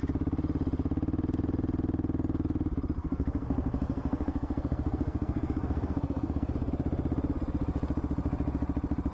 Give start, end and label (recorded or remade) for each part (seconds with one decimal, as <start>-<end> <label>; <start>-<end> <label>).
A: 0.0-3.0 recorded; 3.0-6.7 remade; 6.7-9.1 recorded